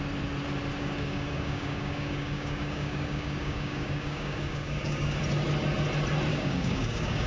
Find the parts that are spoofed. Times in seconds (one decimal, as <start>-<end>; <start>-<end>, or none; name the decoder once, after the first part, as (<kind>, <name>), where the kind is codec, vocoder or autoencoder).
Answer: 0.8-5.2 (codec, DAC); 6.3-7.3